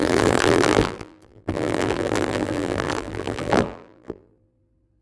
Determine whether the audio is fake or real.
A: fake